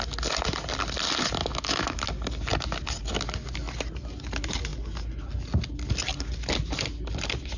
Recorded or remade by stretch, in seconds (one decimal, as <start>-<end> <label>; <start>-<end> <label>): 0.0-1.4 recorded; 1.4-2.0 remade; 2.0-7.6 recorded